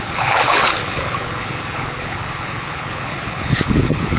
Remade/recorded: remade